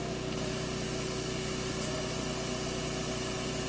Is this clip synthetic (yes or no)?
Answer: no